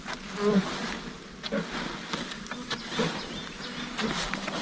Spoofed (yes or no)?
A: no